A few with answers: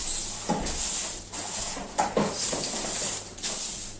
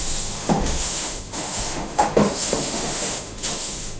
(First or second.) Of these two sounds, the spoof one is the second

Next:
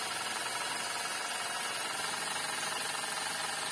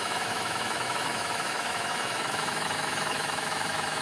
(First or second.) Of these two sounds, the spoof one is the second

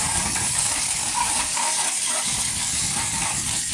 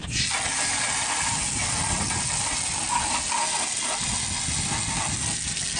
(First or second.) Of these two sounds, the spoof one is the first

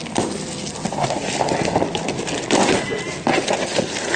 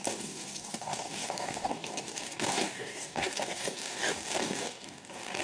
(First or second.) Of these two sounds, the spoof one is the second